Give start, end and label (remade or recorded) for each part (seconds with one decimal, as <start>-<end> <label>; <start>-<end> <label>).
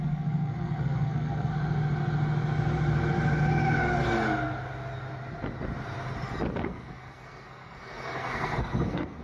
0.0-1.5 remade; 1.5-6.6 recorded; 6.6-9.2 remade